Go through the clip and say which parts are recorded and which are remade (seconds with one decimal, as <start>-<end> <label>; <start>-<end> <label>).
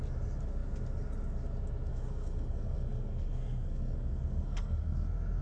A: 0.0-1.9 recorded; 1.9-5.4 remade